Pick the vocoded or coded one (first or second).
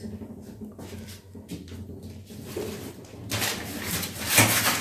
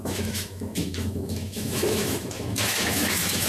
second